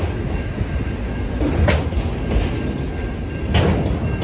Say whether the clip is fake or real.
real